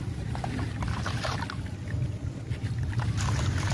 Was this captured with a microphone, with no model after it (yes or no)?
yes